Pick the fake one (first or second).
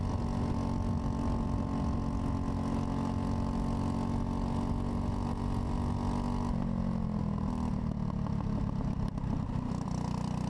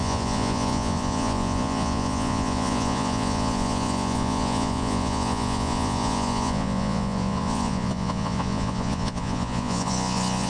second